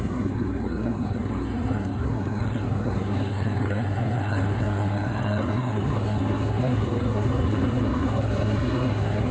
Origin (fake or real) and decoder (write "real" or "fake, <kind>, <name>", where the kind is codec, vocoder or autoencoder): fake, codec, SNAC